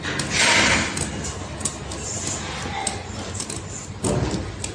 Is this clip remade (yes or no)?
no